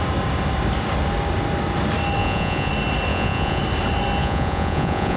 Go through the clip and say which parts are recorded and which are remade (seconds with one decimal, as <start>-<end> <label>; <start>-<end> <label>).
0.0-2.2 recorded; 2.2-2.7 remade; 2.7-3.1 recorded; 3.1-3.6 remade; 3.6-4.2 recorded; 4.2-5.2 remade